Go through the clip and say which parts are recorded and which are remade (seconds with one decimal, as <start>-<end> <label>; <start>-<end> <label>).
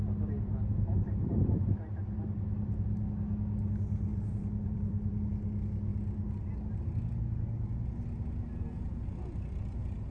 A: 0.0-0.9 recorded; 0.9-2.0 remade; 2.0-4.1 recorded; 4.1-5.3 remade; 5.3-10.1 recorded